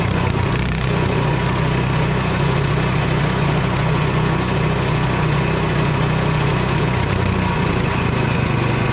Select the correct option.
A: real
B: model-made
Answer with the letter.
B